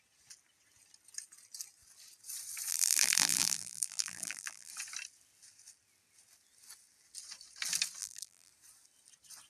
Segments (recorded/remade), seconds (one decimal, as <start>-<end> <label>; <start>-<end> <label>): 0.0-2.7 recorded; 2.7-4.7 remade; 4.7-8.0 recorded; 8.0-8.5 remade; 8.5-9.5 recorded